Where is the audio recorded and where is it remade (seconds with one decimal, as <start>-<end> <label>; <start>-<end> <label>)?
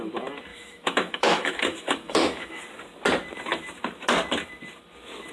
0.0-0.5 recorded; 0.5-2.6 remade; 2.6-5.3 recorded